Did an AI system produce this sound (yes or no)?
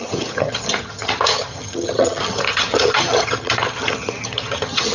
yes